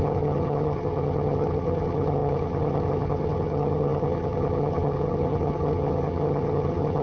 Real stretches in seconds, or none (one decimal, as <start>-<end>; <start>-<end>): none